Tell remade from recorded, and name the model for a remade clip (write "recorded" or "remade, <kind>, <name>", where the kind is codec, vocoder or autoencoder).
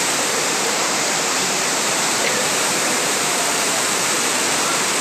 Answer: remade, vocoder, BigVGAN v2